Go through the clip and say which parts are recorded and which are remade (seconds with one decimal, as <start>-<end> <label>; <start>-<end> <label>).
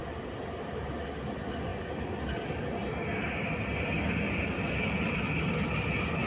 0.0-6.3 recorded